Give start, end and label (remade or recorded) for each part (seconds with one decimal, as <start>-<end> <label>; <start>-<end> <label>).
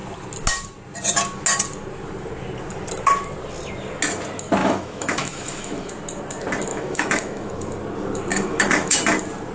0.0-4.6 recorded; 4.6-5.9 remade; 5.9-6.7 recorded; 6.7-7.5 remade; 7.5-8.3 recorded; 8.3-9.0 remade; 9.0-9.5 recorded